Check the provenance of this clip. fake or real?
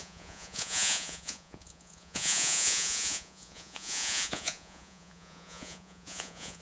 fake